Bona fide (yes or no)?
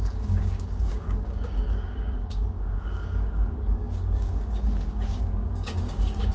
no